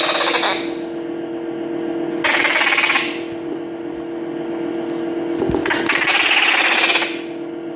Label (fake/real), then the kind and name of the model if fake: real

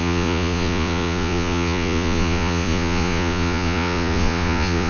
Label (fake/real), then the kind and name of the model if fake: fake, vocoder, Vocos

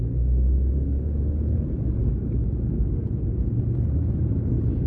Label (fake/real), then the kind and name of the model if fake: real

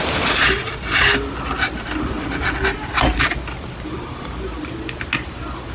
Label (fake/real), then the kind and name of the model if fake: real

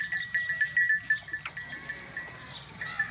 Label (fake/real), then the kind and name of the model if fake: real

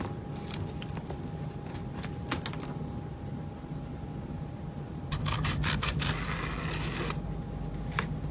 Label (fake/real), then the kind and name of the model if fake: real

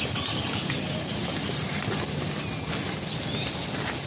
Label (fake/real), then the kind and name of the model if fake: real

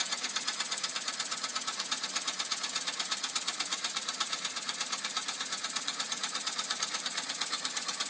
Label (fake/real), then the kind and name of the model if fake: fake, vocoder, Vocos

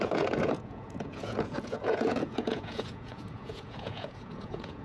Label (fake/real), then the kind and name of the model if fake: fake, vocoder, Vocos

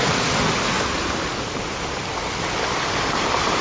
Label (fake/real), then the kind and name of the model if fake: real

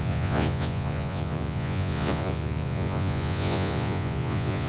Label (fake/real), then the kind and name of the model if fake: fake, vocoder, Vocos